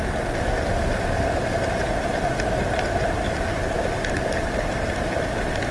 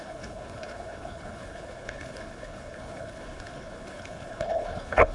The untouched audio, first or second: first